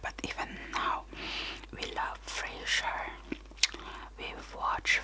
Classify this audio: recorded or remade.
recorded